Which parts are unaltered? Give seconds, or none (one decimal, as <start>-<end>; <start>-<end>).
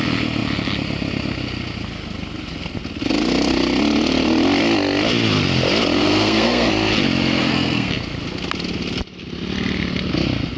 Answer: 0.0-6.0; 6.7-7.4; 7.9-10.6